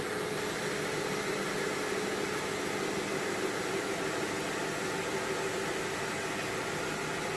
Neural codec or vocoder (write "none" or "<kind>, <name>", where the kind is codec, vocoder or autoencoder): none